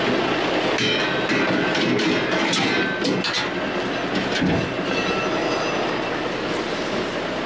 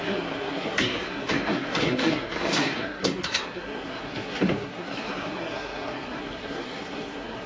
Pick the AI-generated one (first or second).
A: second